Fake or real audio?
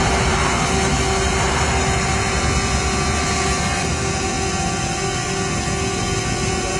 real